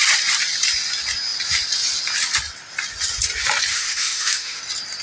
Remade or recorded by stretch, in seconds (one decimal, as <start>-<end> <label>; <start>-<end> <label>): 0.0-3.7 recorded; 3.7-4.6 remade; 4.6-5.0 recorded

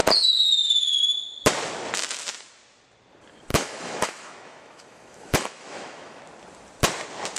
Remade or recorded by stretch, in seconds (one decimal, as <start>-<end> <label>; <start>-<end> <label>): 0.0-3.5 recorded; 3.5-6.2 remade; 6.2-7.4 recorded

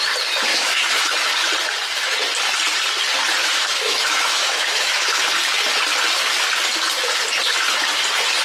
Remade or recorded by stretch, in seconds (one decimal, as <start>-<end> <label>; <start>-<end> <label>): 0.0-0.5 recorded; 0.5-1.1 remade; 1.1-3.4 recorded; 3.4-5.2 remade; 5.2-8.4 recorded

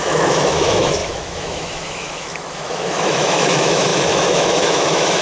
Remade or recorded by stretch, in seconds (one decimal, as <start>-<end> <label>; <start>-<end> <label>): 0.0-5.2 remade